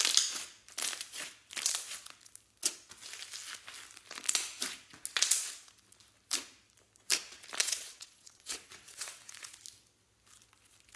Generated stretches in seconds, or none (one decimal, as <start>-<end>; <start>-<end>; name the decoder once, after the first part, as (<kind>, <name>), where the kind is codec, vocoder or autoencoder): 7.6-9.5 (vocoder, WaveNeXt)